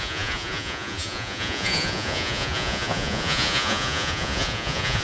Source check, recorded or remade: remade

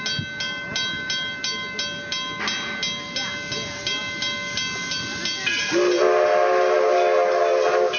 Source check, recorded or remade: recorded